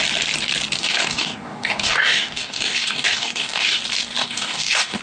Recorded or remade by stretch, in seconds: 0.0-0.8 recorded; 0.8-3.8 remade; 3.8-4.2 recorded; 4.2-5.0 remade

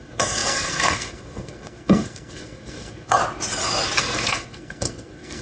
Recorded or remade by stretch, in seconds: 0.0-3.2 remade; 3.2-4.0 recorded; 4.0-5.4 remade